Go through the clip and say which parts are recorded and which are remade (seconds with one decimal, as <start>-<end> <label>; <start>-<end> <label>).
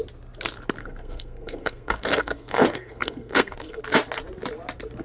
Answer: 0.0-0.8 recorded; 0.8-3.8 remade; 3.8-5.0 recorded